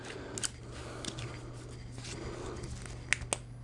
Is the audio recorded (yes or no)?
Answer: yes